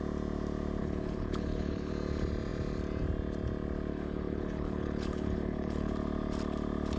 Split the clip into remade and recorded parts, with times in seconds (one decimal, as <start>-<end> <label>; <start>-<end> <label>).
0.0-0.8 recorded; 0.8-1.9 remade; 1.9-3.9 recorded; 3.9-5.9 remade; 5.9-7.0 recorded